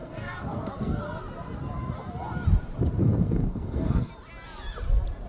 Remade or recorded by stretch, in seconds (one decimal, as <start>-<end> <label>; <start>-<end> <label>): 0.0-1.0 remade; 1.0-3.0 recorded; 3.0-4.1 remade; 4.1-5.3 recorded